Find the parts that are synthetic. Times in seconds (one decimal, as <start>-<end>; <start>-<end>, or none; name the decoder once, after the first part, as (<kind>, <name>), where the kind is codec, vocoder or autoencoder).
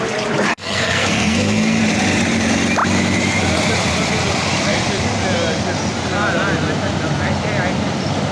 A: 0.5-1.8 (codec, SNAC)